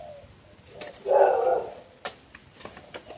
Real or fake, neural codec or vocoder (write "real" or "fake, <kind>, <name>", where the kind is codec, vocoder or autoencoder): fake, vocoder, BigVGAN v2